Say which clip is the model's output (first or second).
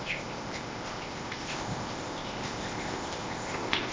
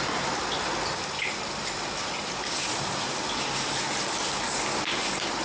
first